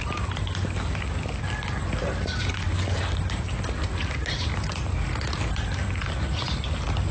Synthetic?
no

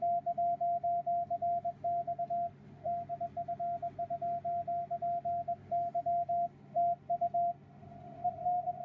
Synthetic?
no